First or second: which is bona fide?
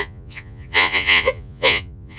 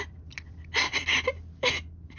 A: second